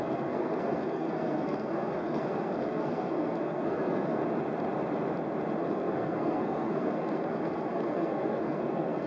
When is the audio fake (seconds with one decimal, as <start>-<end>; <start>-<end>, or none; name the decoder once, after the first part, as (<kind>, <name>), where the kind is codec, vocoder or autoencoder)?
0.0-4.2 (codec, SNAC); 5.6-9.1